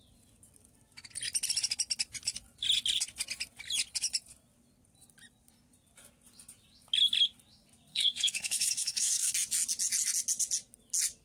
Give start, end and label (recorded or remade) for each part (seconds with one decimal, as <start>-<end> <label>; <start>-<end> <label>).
0.0-7.9 recorded; 7.9-9.3 remade; 9.3-11.2 recorded